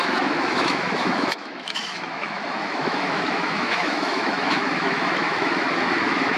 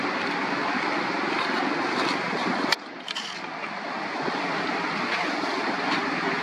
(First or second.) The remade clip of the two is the first